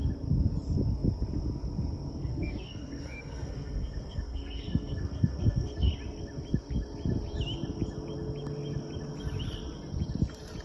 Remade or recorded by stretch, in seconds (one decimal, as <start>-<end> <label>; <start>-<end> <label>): 0.0-2.2 recorded; 2.2-5.9 remade; 5.9-10.6 recorded